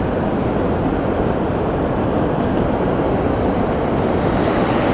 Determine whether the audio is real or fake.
real